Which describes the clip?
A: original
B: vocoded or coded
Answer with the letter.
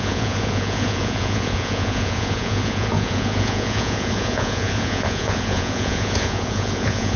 B